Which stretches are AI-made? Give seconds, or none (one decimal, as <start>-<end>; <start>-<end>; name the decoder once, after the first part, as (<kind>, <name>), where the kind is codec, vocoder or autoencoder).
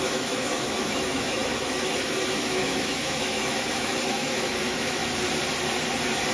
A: 0.0-5.0 (autoencoder, DAC-VAE)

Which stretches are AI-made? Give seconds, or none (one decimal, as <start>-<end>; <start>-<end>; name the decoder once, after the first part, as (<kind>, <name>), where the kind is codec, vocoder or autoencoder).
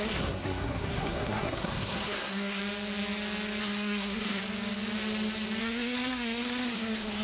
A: 0.0-2.6 (codec, SNAC); 3.6-4.4; 5.6-7.2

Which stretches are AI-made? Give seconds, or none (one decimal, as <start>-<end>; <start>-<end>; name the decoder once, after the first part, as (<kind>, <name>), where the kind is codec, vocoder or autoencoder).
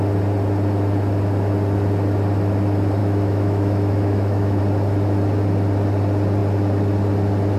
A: 3.0-4.6 (autoencoder, DAC-VAE)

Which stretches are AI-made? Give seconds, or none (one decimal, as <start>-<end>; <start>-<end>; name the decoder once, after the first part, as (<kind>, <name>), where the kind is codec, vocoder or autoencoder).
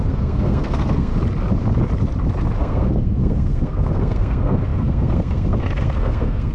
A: 0.0-1.1 (codec, SNAC); 2.6-6.5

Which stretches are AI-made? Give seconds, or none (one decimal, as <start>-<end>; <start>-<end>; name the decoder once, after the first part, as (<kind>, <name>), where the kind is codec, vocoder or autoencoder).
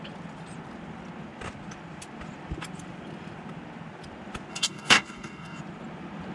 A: 4.5-5.6 (codec, DAC)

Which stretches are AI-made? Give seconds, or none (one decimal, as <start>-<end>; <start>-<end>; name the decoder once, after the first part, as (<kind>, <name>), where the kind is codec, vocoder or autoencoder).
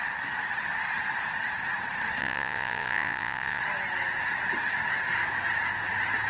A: 2.2-3.6 (vocoder, Vocos)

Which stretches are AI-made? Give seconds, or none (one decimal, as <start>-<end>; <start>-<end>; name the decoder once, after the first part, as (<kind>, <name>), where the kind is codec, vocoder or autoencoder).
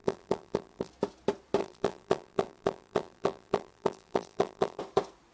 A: 0.0-0.9 (vocoder, BigVGAN v2); 1.6-4.8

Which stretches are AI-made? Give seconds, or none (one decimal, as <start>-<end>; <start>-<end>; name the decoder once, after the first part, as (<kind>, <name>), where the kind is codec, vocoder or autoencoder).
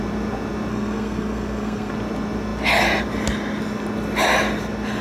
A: 0.7-1.9 (codec, SNAC)